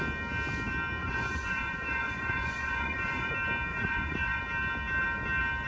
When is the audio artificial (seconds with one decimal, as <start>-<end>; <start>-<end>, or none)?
1.0-3.3; 3.7-4.4